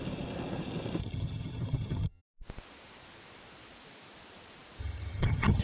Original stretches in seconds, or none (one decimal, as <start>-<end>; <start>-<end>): 0.0-1.0; 2.2-4.8